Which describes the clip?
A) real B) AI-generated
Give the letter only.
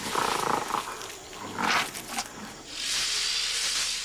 A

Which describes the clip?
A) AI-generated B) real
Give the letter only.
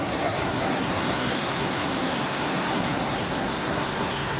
A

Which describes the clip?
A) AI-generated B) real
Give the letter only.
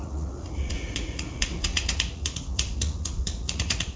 A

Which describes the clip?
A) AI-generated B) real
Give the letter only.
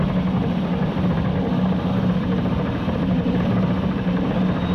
B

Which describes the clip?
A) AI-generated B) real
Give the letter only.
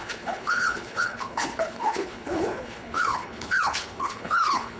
A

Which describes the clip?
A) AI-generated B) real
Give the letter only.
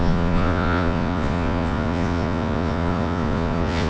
A